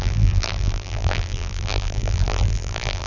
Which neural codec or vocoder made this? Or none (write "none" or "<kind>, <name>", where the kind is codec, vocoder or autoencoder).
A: vocoder, BigVGAN v2